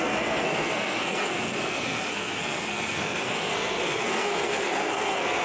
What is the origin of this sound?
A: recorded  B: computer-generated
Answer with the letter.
B